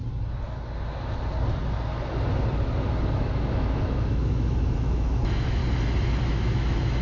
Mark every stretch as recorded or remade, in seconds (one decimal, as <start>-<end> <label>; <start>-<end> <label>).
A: 0.0-3.0 recorded; 3.0-5.6 remade; 5.6-6.2 recorded; 6.2-7.0 remade